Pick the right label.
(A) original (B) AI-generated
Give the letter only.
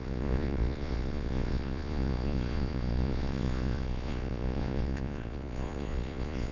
B